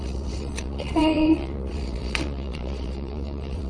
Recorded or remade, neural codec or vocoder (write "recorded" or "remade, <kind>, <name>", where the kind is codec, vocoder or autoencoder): remade, vocoder, WaveNeXt